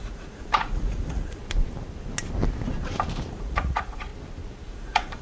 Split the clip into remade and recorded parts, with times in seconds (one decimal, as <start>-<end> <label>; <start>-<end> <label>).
0.0-1.4 remade; 1.4-3.3 recorded; 3.3-4.1 remade; 4.1-4.7 recorded; 4.7-5.2 remade